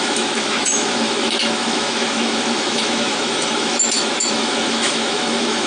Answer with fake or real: fake